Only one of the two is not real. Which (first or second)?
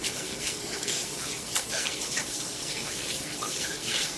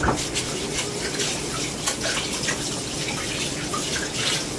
first